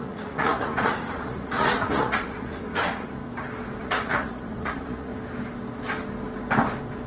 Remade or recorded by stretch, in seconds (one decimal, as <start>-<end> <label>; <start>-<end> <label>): 0.0-3.2 remade; 3.2-3.8 recorded; 3.8-5.1 remade; 5.1-7.1 recorded